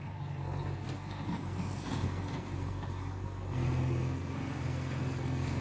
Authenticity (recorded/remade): remade